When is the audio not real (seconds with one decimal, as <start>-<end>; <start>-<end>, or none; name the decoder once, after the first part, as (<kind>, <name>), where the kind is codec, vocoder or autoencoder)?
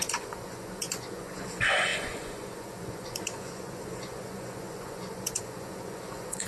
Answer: 0.0-6.5 (vocoder, Vocos)